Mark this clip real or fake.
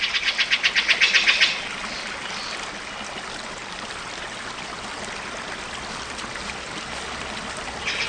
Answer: real